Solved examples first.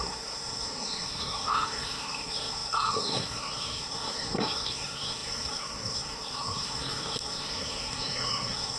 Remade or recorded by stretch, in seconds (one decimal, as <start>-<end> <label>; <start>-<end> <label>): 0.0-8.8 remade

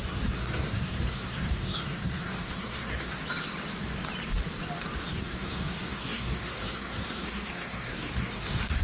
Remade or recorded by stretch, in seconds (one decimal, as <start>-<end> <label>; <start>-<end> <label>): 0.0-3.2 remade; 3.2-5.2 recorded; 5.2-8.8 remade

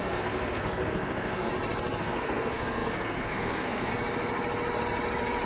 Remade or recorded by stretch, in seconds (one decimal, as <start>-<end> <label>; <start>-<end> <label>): 0.0-1.5 remade; 1.5-2.0 recorded; 2.0-3.9 remade; 3.9-5.5 recorded